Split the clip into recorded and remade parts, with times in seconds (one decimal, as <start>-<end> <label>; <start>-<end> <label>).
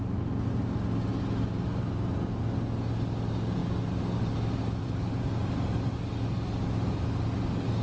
0.0-4.8 recorded; 4.8-5.7 remade; 5.7-7.8 recorded